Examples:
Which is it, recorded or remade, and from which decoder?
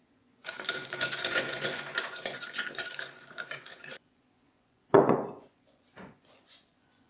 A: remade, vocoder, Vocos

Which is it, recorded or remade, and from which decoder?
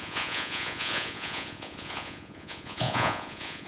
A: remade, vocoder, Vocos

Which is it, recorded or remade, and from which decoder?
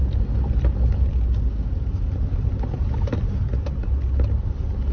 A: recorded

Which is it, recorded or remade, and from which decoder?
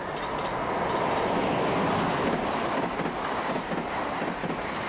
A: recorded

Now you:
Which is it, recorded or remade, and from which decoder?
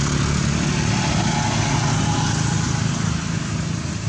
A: recorded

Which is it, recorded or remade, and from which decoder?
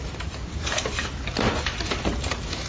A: recorded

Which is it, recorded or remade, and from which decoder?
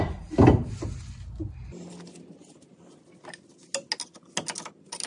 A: recorded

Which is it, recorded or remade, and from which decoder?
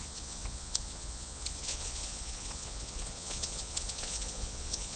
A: remade, vocoder, Vocos